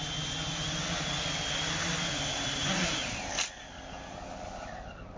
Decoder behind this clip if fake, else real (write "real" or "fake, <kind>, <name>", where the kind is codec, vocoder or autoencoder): real